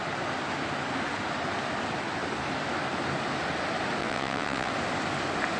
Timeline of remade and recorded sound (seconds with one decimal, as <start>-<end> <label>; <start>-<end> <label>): 0.0-4.0 recorded; 4.0-4.7 remade; 4.7-5.6 recorded

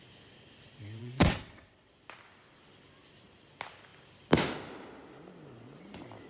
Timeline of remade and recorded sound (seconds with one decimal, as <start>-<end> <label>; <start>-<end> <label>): 0.0-1.0 recorded; 1.0-1.9 remade; 1.9-6.3 recorded

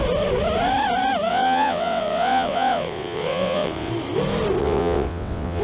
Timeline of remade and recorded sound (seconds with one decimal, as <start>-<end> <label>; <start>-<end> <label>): 0.0-1.3 recorded; 1.3-3.9 remade; 3.9-4.6 recorded; 4.6-5.6 remade

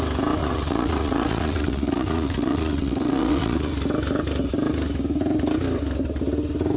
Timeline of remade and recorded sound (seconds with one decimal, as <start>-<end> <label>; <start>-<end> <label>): 0.0-0.4 recorded; 0.4-3.7 remade; 3.7-6.8 recorded